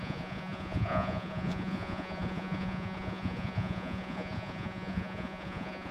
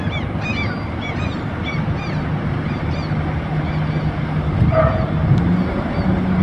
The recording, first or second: second